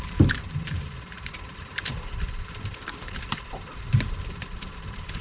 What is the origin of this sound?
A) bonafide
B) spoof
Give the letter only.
B